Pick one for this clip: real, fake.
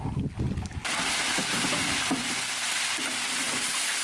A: real